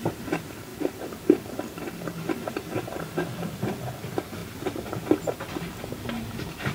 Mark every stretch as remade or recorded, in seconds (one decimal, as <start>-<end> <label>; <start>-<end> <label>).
0.0-0.7 recorded; 0.7-2.5 remade; 2.5-4.4 recorded; 4.4-5.2 remade; 5.2-6.7 recorded